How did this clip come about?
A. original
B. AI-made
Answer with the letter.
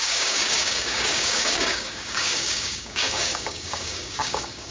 B